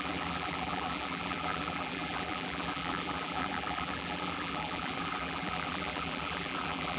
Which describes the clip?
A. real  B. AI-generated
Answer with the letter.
B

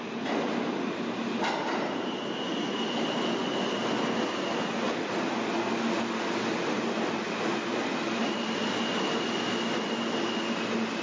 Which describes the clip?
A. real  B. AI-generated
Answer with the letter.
A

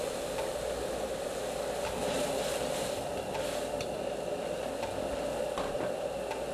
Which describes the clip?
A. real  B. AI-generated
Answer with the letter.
A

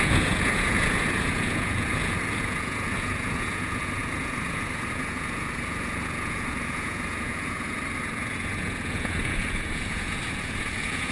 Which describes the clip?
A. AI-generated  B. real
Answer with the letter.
A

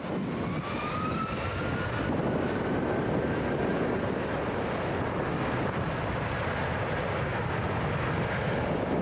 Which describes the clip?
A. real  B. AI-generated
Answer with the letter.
A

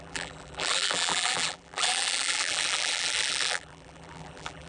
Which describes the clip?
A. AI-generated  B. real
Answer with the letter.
A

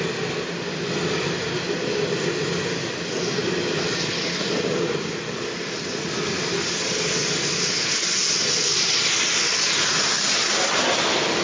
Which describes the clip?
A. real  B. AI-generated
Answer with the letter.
A